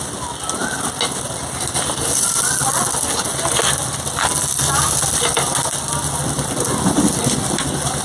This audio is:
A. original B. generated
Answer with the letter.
A